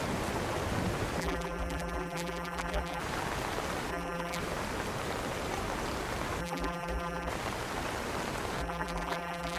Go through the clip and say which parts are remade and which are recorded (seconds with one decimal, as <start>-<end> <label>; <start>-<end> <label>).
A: 0.0-1.2 recorded; 1.2-3.0 remade; 3.0-3.9 recorded; 3.9-4.4 remade; 4.4-6.4 recorded; 6.4-7.3 remade; 7.3-8.6 recorded; 8.6-9.6 remade